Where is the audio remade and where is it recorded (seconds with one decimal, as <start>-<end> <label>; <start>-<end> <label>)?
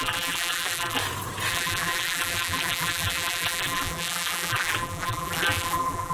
0.0-1.0 remade; 1.0-1.5 recorded; 1.5-6.1 remade